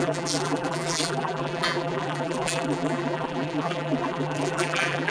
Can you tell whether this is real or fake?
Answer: fake